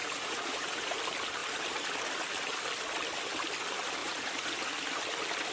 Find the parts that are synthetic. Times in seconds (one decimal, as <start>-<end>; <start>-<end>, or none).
0.0-1.0; 4.0-4.7